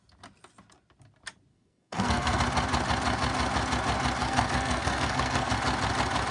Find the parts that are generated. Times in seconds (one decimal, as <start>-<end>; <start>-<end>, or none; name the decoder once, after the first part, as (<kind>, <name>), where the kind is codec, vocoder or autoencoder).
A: 1.5-2.4 (codec, SNAC); 4.2-5.5